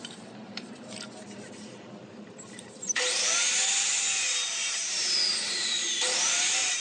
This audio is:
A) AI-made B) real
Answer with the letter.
A